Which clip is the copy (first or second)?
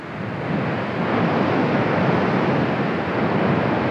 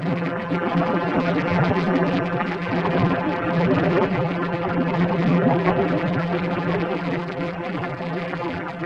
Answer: second